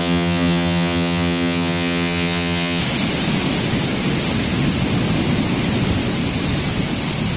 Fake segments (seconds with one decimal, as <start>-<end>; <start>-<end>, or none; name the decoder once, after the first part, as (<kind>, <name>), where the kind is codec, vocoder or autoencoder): 0.0-2.8 (vocoder, HiFi-GAN)